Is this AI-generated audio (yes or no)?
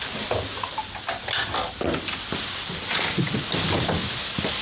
no